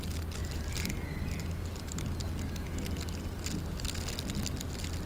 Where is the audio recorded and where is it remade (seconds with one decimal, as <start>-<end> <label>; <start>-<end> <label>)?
0.0-0.4 recorded; 0.4-0.9 remade; 0.9-5.1 recorded